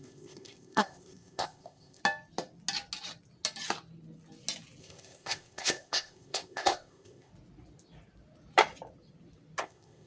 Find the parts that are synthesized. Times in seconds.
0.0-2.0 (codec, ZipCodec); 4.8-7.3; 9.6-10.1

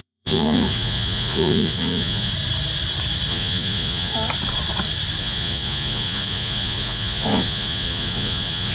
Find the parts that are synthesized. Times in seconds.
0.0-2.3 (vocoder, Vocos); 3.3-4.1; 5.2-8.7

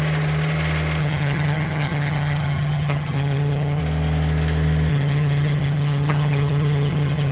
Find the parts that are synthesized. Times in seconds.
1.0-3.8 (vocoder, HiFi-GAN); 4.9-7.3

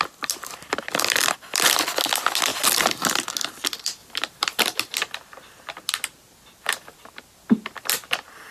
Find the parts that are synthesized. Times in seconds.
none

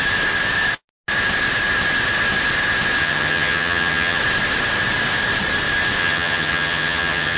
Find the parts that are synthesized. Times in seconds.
3.0-4.2 (vocoder, HiFi-GAN); 6.0-7.4

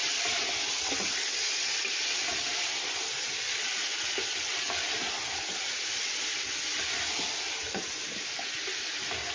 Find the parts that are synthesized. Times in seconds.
none

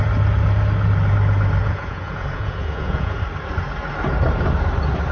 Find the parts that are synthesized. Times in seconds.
1.6-3.2 (vocoder, Vocos)